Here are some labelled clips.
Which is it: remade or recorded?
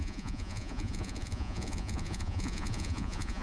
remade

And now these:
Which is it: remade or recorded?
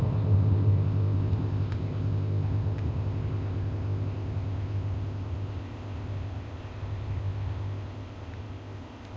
remade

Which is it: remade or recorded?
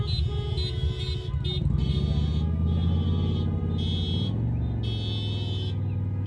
recorded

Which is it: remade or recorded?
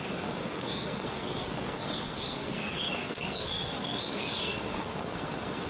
remade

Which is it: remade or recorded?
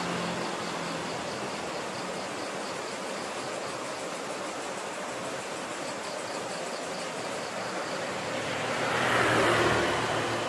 recorded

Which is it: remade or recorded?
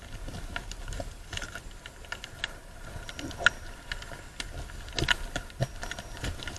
recorded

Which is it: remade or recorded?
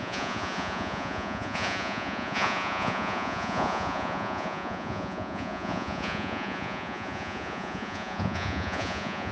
remade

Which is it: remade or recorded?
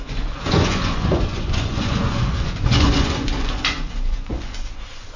remade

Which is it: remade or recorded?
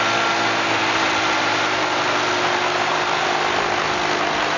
recorded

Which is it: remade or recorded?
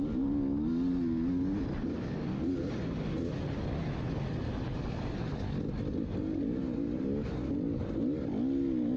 recorded